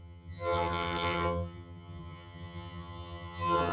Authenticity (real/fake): fake